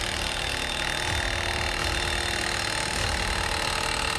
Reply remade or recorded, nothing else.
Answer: recorded